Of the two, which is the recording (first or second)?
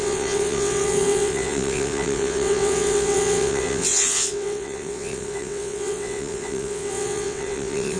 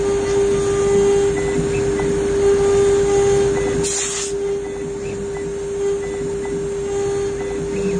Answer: second